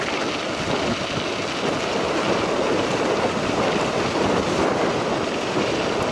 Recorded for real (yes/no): yes